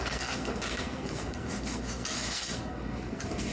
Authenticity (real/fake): fake